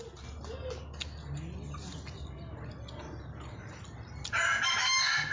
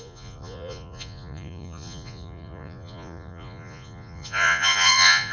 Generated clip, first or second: second